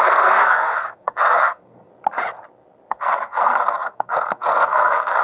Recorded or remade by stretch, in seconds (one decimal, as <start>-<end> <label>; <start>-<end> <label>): 0.0-1.9 remade; 1.9-2.9 recorded; 2.9-5.2 remade